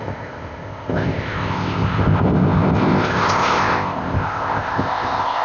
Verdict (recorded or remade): remade